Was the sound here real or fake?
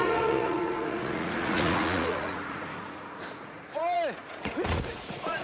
fake